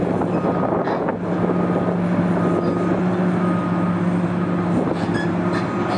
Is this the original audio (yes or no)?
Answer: yes